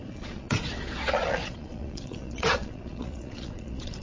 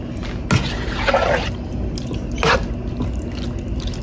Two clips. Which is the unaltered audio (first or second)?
second